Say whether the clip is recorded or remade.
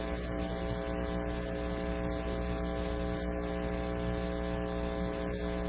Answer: recorded